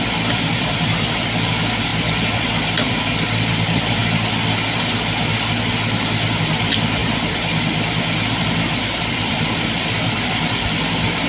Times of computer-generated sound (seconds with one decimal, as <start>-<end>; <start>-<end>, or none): 0.0-1.9; 2.6-4.0; 6.4-11.3